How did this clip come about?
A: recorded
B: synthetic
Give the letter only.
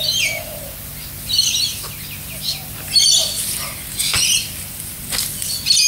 A